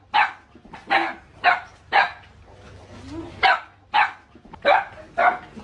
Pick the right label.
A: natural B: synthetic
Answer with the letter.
A